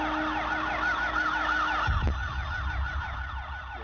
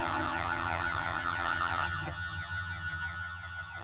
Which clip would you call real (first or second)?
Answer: first